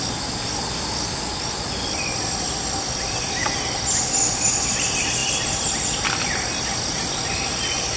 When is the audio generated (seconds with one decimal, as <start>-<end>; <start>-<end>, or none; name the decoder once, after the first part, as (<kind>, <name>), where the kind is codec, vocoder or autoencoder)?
none